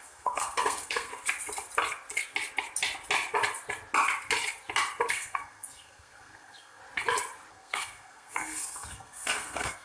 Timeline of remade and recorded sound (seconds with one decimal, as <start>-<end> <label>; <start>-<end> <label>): 0.0-1.1 remade; 1.1-5.1 recorded; 5.1-6.8 remade; 6.8-7.5 recorded; 7.5-9.8 remade